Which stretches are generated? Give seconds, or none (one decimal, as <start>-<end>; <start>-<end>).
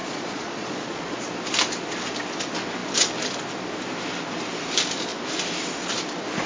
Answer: 0.0-1.3